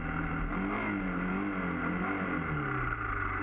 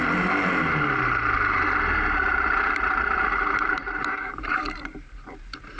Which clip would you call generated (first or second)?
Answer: second